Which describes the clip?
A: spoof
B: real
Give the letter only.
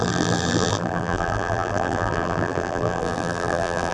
A